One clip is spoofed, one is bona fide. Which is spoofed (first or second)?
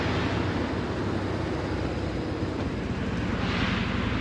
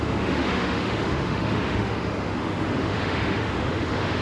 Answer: second